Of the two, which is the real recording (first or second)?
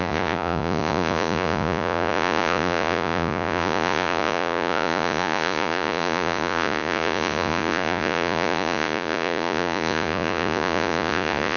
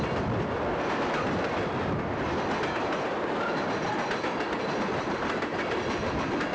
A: second